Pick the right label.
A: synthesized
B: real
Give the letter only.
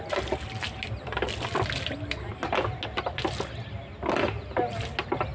B